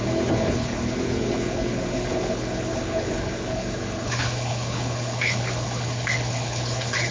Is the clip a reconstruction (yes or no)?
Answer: yes